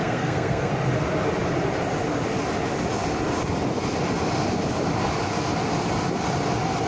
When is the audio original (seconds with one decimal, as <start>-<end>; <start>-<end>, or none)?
0.7-6.9